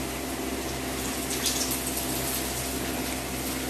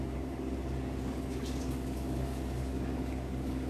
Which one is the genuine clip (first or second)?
first